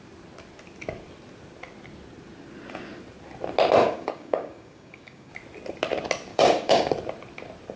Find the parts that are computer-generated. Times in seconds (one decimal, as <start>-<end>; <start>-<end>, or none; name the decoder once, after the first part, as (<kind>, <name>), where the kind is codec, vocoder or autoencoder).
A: 3.8-5.3 (codec, DAC); 6.3-6.9